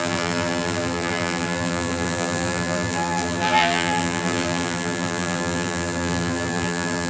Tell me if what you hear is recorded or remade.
remade